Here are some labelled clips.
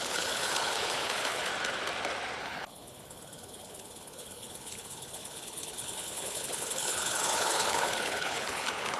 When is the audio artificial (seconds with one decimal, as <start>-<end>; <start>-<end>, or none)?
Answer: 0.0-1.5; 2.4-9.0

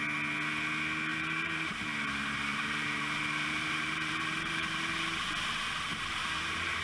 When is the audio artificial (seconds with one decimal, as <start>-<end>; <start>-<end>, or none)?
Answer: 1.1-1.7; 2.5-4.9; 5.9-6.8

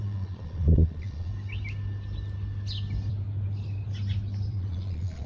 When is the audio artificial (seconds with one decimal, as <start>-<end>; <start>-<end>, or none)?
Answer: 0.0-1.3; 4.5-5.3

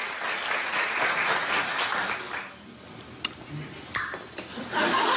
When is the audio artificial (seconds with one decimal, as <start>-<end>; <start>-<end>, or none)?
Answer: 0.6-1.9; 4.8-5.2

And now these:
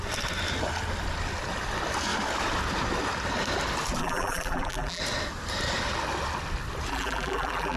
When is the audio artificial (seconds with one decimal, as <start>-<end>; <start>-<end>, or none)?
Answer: 4.0-5.0; 6.9-7.8

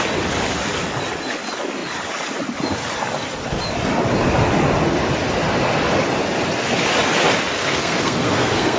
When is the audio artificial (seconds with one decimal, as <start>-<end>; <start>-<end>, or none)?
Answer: 7.6-8.8

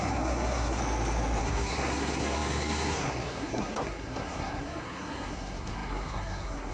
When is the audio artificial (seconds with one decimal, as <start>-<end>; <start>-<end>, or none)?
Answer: 0.0-0.8; 1.4-6.7

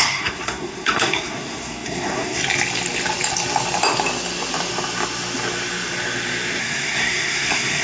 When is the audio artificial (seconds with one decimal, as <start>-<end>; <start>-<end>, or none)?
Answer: 0.0-2.4; 6.6-7.8